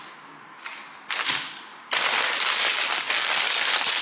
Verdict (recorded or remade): remade